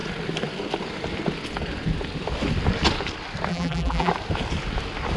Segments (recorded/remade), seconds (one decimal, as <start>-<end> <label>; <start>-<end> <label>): 0.0-3.5 recorded; 3.5-4.1 remade; 4.1-5.2 recorded